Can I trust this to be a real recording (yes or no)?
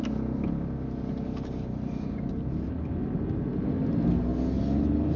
yes